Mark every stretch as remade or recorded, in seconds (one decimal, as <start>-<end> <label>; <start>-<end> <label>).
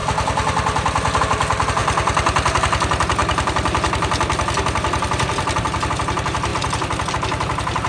0.0-1.2 remade; 1.2-1.8 recorded; 1.8-2.6 remade; 2.6-3.2 recorded; 3.2-5.9 remade; 5.9-6.5 recorded; 6.5-7.1 remade; 7.1-7.9 recorded